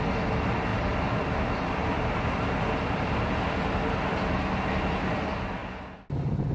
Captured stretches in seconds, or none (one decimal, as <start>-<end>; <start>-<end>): 0.0-6.5